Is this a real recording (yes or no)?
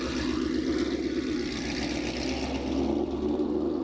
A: yes